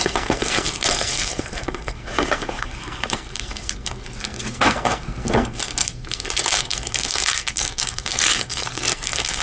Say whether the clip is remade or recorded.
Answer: remade